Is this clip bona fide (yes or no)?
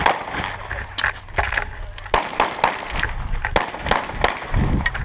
yes